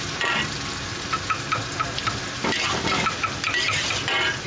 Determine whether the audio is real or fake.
real